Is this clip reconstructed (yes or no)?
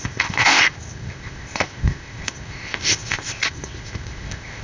yes